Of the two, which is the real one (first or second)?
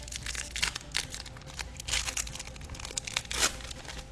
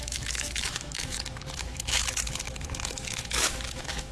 first